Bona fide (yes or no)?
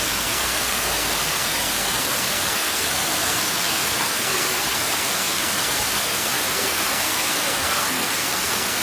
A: no